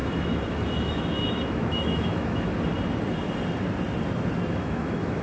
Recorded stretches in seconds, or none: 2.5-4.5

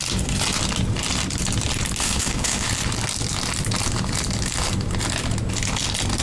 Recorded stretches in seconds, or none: 0.0-2.0; 2.7-6.2

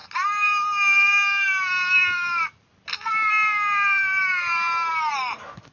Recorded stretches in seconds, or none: 0.0-5.7